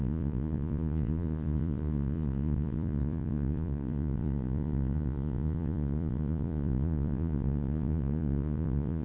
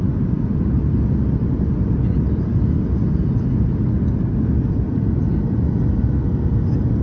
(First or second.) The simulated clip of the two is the first